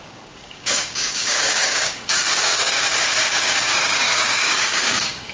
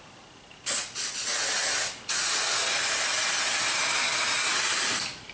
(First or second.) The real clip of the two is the second